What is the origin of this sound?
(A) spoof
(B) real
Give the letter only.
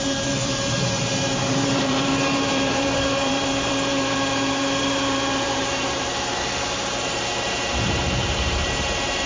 A